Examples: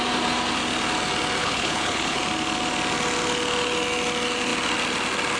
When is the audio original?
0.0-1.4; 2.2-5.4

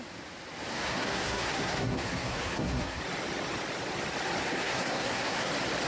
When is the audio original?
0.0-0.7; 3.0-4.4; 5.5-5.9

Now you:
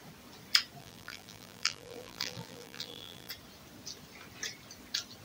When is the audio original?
0.0-0.8; 3.3-5.2

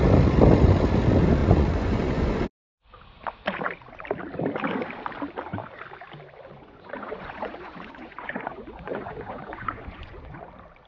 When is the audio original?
0.0-1.4; 2.4-6.5; 10.4-10.9